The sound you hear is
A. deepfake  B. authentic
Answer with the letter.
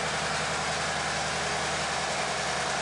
B